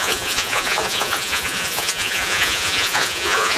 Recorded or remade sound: remade